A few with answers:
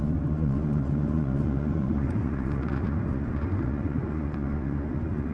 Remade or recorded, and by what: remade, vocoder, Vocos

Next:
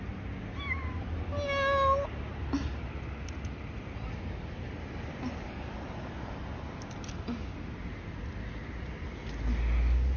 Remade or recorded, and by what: recorded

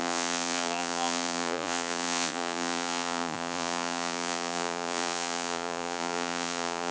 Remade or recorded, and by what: remade, vocoder, Vocos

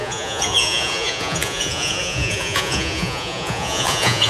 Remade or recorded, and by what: remade, vocoder, Vocos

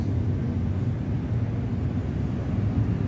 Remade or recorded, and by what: recorded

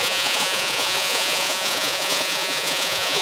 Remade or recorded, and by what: remade, vocoder, Vocos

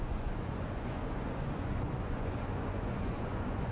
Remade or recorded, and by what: remade, vocoder, Vocos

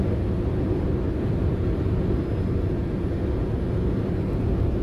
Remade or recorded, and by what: recorded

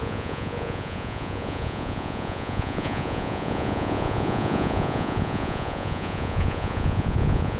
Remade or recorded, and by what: remade, vocoder, Vocos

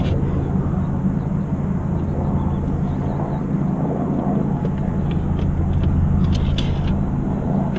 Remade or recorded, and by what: recorded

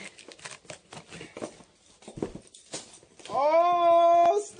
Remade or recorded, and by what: recorded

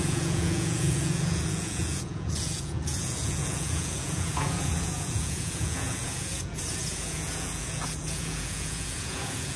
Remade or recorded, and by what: remade, vocoder, Vocos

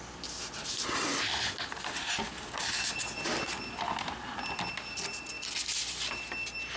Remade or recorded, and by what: recorded